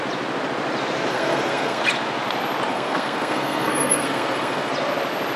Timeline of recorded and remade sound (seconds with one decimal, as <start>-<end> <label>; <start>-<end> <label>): 0.0-1.1 recorded; 1.1-1.8 remade; 1.8-2.7 recorded; 2.7-4.7 remade; 4.7-5.4 recorded